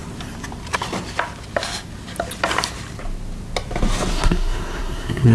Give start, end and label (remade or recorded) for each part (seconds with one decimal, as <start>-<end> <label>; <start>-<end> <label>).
0.0-4.1 recorded; 4.1-5.3 remade